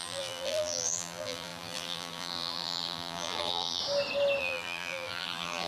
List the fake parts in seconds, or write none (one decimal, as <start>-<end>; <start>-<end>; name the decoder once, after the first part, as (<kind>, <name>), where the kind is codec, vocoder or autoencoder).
0.0-3.8 (vocoder, BigVGAN v2); 4.4-5.7